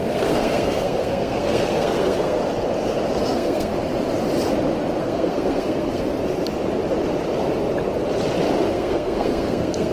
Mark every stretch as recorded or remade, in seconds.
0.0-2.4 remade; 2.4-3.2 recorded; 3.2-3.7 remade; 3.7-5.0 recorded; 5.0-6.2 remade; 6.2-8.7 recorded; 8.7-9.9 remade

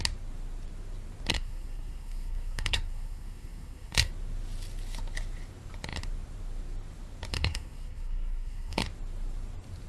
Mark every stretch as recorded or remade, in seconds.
0.0-1.3 recorded; 1.3-4.1 remade; 4.1-7.3 recorded; 7.3-8.8 remade; 8.8-9.9 recorded